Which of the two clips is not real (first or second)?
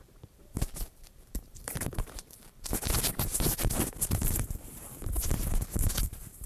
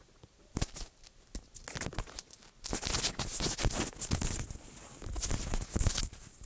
first